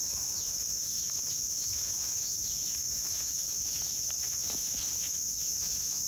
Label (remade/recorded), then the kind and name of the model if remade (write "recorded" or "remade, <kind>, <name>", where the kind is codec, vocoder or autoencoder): remade, autoencoder, DAC-VAE